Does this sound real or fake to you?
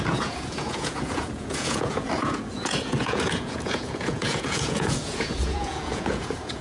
fake